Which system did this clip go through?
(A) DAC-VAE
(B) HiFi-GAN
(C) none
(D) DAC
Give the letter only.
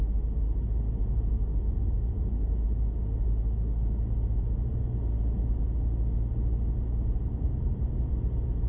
C